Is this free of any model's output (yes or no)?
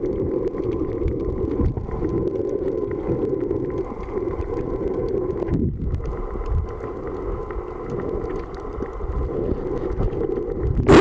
yes